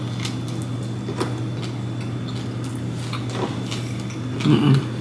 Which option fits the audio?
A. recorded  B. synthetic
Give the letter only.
A